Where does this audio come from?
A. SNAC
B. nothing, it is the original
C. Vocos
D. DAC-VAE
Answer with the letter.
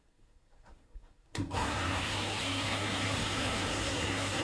A